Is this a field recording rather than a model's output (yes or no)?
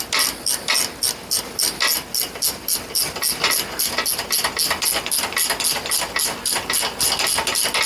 yes